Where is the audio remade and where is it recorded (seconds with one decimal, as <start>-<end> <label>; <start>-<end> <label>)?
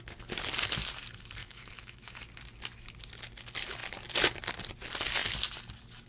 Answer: 0.0-1.4 recorded; 1.4-2.2 remade; 2.2-6.1 recorded